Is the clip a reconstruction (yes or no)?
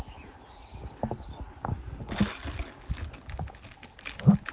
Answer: no